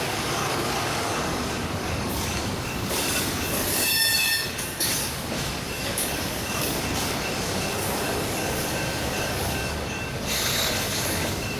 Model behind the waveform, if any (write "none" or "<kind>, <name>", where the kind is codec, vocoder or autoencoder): codec, DAC